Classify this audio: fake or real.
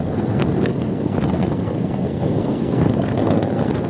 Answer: fake